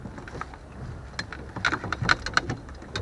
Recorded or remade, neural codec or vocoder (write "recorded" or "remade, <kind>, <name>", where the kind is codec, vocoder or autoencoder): recorded